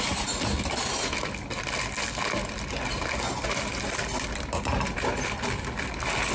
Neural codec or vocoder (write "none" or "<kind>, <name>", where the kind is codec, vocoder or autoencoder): none